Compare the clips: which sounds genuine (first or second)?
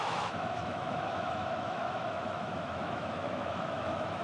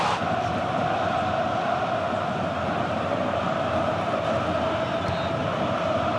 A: second